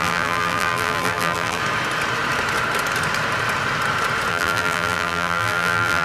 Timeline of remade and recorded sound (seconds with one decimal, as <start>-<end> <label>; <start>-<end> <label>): 0.0-1.6 remade; 1.6-4.3 recorded; 4.3-6.0 remade